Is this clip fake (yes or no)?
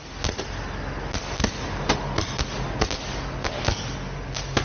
no